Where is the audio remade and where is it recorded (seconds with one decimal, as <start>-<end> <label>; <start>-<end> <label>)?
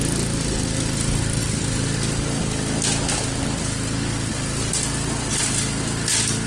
0.0-6.5 recorded